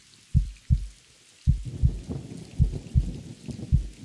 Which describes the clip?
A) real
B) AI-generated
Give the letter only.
A